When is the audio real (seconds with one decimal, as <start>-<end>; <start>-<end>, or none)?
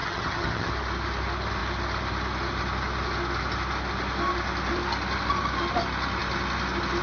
0.7-7.0